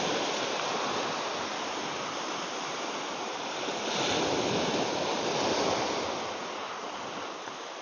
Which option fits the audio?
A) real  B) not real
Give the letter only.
A